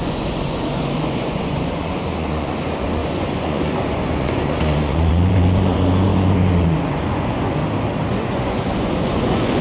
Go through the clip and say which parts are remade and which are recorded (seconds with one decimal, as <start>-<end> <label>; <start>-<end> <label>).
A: 0.0-7.6 remade; 7.6-8.1 recorded; 8.1-9.6 remade